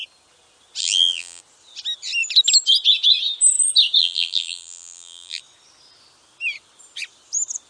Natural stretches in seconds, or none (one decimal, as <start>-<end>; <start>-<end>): 0.0-0.8; 1.4-4.0; 5.4-7.7